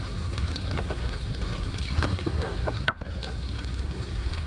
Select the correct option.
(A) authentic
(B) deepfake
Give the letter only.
B